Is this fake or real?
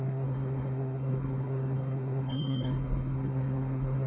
fake